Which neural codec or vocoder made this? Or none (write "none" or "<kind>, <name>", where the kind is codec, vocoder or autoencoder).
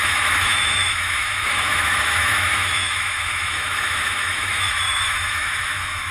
autoencoder, DAC-VAE